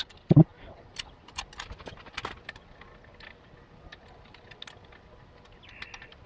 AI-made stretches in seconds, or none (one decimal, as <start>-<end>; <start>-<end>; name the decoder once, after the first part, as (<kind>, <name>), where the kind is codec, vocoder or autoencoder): none